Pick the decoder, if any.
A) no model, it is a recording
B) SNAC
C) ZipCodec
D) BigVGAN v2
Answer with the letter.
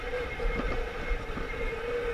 A